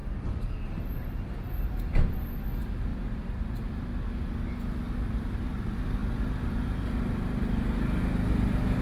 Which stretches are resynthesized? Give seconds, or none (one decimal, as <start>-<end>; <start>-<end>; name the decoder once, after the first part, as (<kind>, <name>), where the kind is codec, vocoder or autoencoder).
none